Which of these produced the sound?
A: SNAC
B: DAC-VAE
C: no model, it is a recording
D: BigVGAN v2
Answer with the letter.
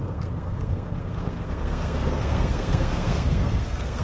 A